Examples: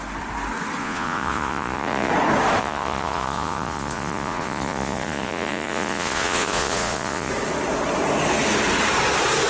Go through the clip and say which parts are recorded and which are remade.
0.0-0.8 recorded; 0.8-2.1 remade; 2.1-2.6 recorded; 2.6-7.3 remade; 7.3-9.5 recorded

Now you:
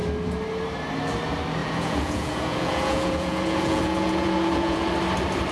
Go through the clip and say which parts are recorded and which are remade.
0.0-1.6 recorded; 1.6-4.9 remade; 4.9-5.5 recorded